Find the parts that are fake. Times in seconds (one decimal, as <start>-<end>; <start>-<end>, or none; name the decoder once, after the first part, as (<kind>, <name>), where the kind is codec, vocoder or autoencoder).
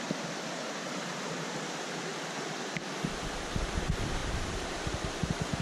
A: 4.2-5.6 (vocoder, BigVGAN v2)